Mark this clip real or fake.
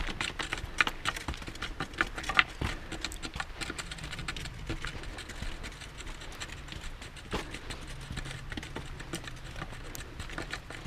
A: real